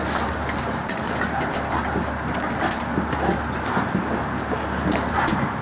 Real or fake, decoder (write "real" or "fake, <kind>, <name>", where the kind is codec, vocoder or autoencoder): real